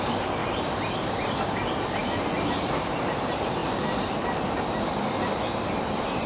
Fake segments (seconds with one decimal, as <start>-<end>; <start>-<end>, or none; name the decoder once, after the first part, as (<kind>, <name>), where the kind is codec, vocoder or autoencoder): 0.4-1.1 (vocoder, BigVGAN v2); 3.6-4.8